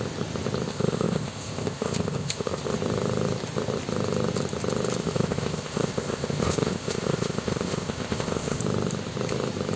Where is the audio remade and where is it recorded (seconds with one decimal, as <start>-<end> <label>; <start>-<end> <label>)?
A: 0.0-0.7 recorded; 0.7-2.6 remade; 2.6-5.0 recorded; 5.0-8.6 remade; 8.6-9.8 recorded